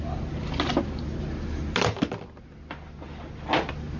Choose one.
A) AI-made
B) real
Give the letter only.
B